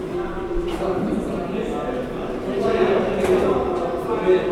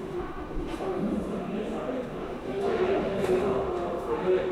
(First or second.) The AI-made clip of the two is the second